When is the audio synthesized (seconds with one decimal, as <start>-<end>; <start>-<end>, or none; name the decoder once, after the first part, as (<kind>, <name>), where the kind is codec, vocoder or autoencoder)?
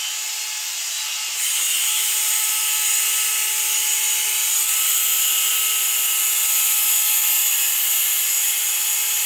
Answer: 0.8-2.5 (vocoder, BigVGAN v2); 4.6-5.5